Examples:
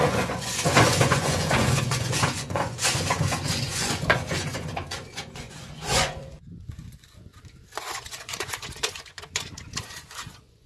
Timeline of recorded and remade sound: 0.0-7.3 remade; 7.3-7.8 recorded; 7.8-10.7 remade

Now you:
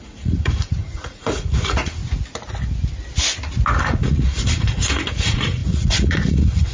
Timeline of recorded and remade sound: 0.0-2.0 remade; 2.0-3.8 recorded; 3.8-6.7 remade

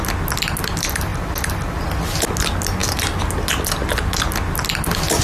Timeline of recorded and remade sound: 0.0-5.2 recorded

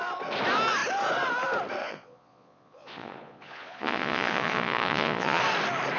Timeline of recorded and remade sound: 0.0-1.8 recorded; 1.8-5.4 remade; 5.4-6.0 recorded

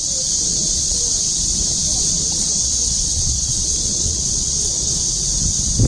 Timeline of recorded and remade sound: 0.0-0.5 recorded; 0.5-1.1 remade; 1.1-1.8 recorded; 1.8-5.0 remade; 5.0-5.9 recorded

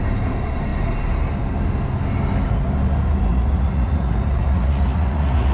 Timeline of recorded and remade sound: 0.0-3.3 recorded; 3.3-5.5 remade

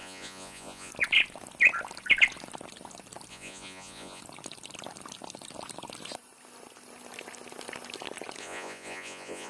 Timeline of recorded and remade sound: 0.0-0.9 remade; 0.9-3.3 recorded; 3.3-4.2 remade; 4.2-8.4 recorded; 8.4-9.5 remade

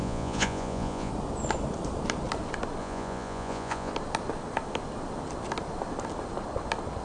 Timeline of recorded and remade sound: 0.0-1.1 remade; 1.1-2.8 recorded; 2.8-3.9 remade; 3.9-7.0 recorded